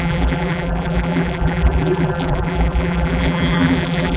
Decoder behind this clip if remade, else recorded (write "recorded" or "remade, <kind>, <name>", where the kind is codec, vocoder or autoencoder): remade, vocoder, BigVGAN v2